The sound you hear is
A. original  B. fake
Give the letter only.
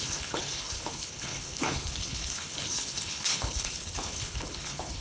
B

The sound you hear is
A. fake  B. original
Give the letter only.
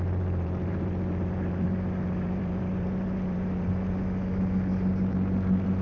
A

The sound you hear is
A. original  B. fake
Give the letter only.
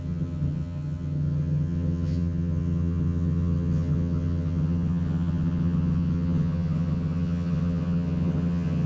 B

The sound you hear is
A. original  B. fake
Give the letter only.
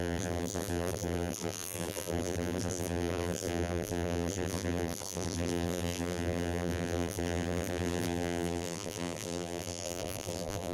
B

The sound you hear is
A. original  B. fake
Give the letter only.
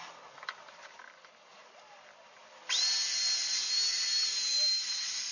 A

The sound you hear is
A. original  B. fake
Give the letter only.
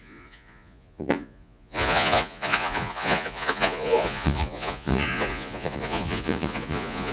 B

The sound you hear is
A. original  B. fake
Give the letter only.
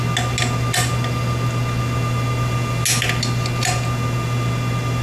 A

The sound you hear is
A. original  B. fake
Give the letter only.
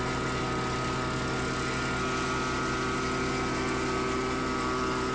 A